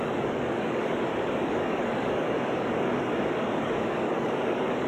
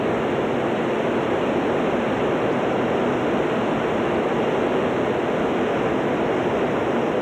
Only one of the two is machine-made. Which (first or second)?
first